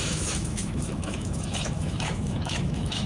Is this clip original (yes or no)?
no